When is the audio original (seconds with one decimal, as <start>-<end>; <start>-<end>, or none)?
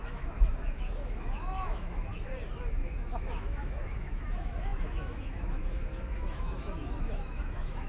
2.1-2.9